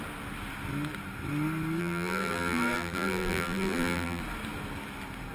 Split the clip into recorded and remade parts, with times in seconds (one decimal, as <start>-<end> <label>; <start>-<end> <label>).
0.0-1.8 recorded; 1.8-4.2 remade; 4.2-5.3 recorded